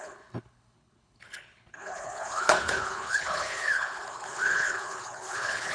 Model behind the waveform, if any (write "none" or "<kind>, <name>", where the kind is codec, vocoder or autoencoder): codec, HILCodec